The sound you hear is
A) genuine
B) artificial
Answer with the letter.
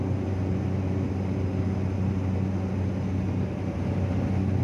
A